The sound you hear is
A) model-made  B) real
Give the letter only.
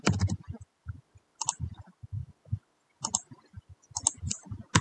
B